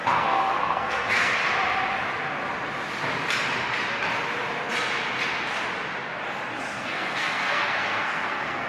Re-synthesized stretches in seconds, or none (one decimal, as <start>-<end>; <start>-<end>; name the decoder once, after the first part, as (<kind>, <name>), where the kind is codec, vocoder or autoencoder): 0.0-1.4 (codec, SNAC); 6.6-8.7